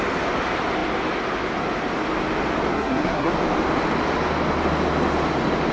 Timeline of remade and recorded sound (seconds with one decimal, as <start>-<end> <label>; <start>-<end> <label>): 0.0-2.7 recorded; 2.7-3.3 remade; 3.3-5.7 recorded